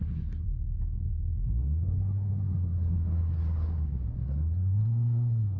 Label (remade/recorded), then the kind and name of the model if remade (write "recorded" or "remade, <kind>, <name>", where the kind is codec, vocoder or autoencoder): remade, codec, SNAC